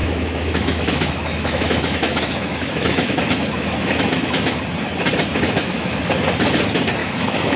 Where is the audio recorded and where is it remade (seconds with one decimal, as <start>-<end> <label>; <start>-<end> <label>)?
0.0-4.6 remade; 4.6-5.3 recorded; 5.3-6.0 remade; 6.0-7.0 recorded; 7.0-7.6 remade